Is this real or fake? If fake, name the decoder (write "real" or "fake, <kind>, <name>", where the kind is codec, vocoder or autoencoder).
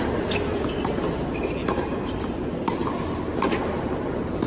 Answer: real